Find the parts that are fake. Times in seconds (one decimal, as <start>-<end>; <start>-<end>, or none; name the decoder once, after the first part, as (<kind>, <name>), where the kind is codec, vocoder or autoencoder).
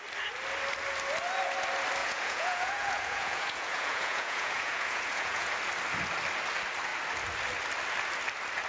2.0-5.5 (vocoder, Vocos)